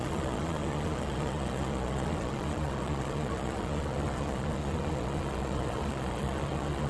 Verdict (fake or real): fake